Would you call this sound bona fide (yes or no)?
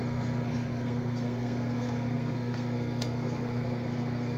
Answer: no